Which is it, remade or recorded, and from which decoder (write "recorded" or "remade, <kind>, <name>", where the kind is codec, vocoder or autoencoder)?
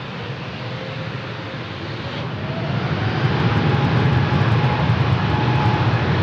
recorded